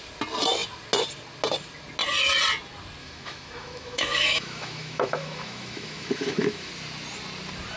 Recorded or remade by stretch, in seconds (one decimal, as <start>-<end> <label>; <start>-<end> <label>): 0.0-3.0 recorded; 3.0-6.7 remade; 6.7-7.8 recorded